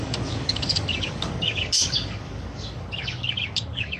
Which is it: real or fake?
fake